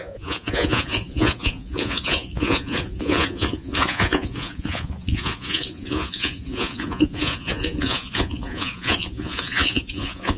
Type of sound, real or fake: fake